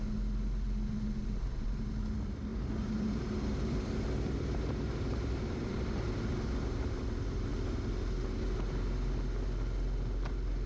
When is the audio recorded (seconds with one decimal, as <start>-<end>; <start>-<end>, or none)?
0.0-1.2; 1.8-2.5; 7.0-10.7